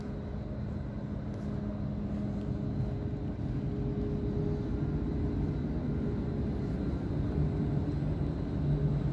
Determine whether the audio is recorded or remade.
recorded